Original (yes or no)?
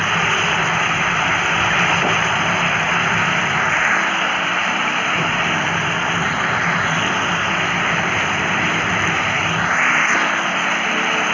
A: yes